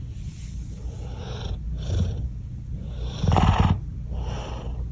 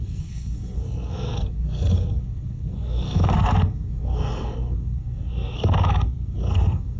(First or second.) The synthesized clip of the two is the second